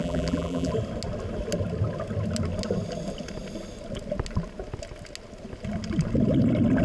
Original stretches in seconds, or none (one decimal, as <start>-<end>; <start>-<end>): 0.7-6.8